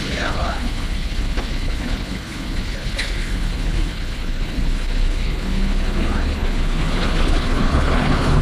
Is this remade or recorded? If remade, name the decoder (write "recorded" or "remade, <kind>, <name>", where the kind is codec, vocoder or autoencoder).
remade, codec, HILCodec